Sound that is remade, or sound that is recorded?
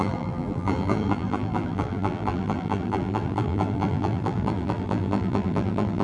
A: remade